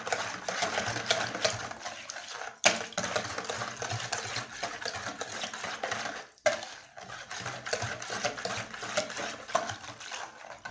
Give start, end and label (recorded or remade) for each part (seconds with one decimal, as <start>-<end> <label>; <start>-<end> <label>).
0.0-10.7 recorded